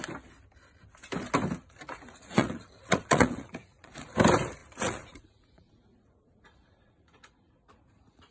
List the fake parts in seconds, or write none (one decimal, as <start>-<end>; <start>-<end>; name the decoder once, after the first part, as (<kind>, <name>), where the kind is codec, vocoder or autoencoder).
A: 1.6-4.1 (vocoder, Vocos); 4.6-8.3